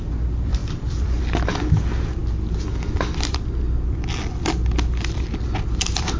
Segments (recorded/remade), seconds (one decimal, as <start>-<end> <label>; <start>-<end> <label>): 0.0-0.6 recorded; 0.6-1.2 remade; 1.2-6.2 recorded